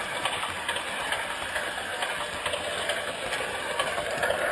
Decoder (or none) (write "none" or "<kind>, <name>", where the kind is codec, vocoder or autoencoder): none